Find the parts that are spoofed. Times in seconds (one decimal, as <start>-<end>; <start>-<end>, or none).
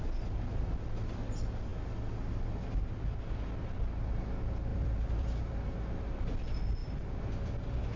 4.7-5.4